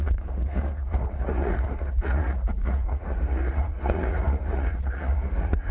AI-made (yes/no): yes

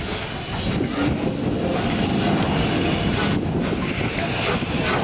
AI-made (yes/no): no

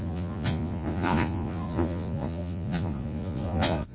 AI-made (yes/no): yes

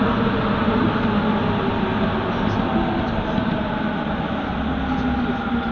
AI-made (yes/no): no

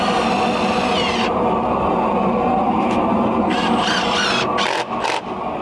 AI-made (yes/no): no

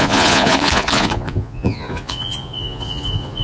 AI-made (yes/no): yes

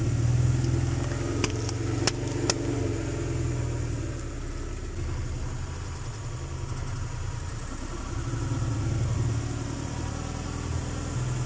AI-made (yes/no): no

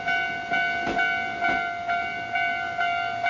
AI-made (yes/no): no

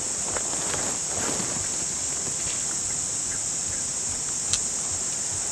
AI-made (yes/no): no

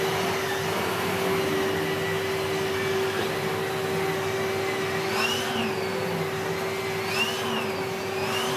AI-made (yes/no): no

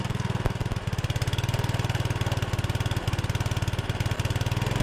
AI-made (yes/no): no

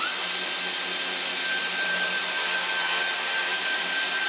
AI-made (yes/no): no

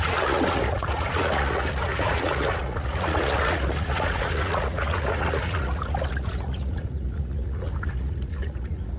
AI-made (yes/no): yes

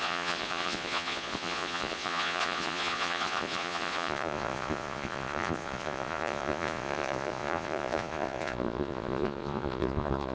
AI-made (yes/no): yes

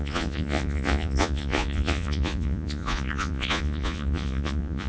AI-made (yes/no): yes